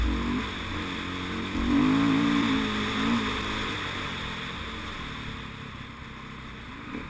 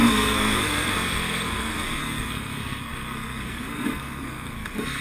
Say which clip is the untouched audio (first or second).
first